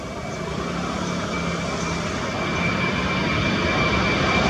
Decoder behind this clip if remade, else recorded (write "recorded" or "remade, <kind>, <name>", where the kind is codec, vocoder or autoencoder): remade, vocoder, BigVGAN v2